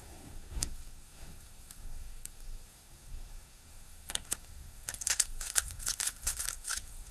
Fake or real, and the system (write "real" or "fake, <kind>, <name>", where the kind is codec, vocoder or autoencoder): fake, codec, SNAC